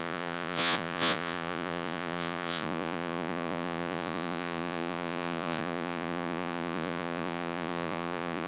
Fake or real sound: fake